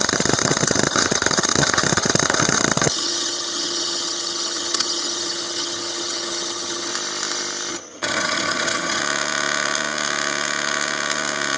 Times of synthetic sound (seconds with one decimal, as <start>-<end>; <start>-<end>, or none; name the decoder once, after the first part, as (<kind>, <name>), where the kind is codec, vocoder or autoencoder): 0.0-6.9 (vocoder, HiFi-GAN); 7.7-9.0